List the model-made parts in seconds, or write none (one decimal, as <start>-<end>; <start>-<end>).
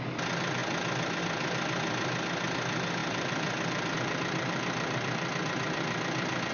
3.0-6.5